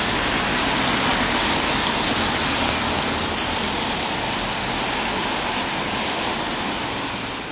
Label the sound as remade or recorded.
recorded